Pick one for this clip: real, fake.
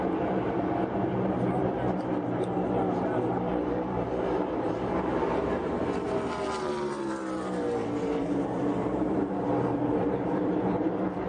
fake